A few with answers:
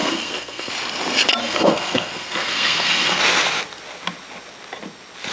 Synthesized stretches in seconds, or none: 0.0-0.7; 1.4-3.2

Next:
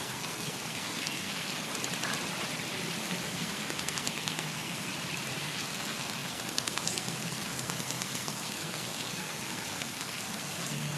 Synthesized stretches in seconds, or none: 0.0-1.7; 3.0-4.9; 5.4-11.0

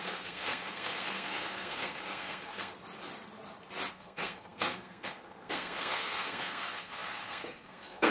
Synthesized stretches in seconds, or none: 0.0-2.7; 3.9-8.1

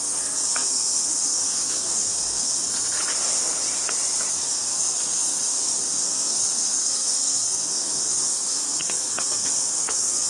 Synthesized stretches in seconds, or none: 0.0-3.0; 4.3-10.3

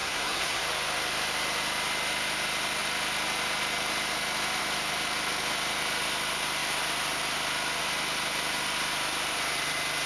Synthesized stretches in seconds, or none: 0.0-0.6

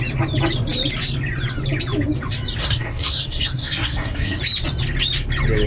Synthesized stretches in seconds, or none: 2.6-4.4